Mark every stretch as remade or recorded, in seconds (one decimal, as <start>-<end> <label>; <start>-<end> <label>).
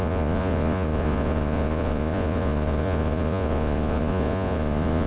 0.0-5.1 remade